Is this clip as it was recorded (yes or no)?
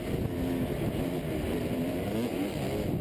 yes